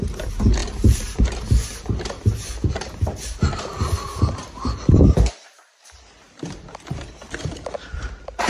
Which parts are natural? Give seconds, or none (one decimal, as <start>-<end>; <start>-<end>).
0.0-0.6; 1.2-8.5